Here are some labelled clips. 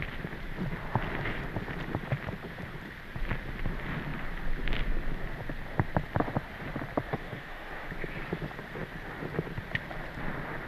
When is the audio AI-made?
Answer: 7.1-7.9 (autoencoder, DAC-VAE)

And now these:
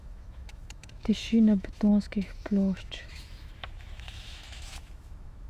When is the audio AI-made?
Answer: 0.0-5.5 (autoencoder, DAC-VAE)

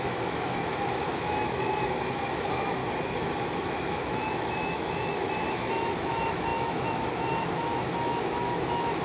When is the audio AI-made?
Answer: 0.0-2.8 (autoencoder, DAC-VAE); 3.4-9.0

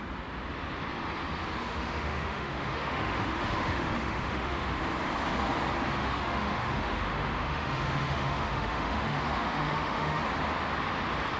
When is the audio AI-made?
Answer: 1.7-4.8 (autoencoder, DAC-VAE); 6.0-10.2

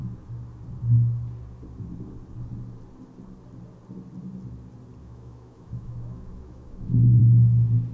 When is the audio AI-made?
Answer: 5.0-7.2 (autoencoder, DAC-VAE)